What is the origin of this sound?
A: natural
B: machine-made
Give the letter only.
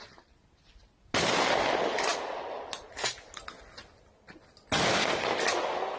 A